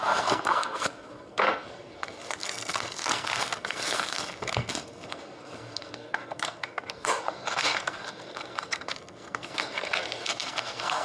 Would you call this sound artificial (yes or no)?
yes